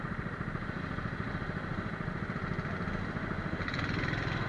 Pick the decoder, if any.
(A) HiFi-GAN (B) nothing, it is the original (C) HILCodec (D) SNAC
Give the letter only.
B